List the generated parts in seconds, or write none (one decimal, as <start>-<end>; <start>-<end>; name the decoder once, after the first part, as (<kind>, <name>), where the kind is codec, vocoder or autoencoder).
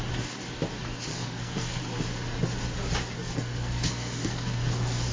1.1-1.8 (codec, SNAC); 3.2-5.1